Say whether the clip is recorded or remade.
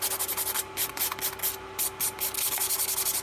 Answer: recorded